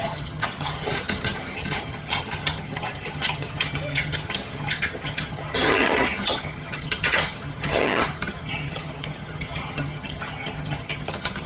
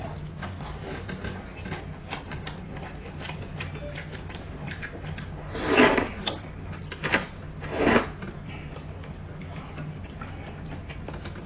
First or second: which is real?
second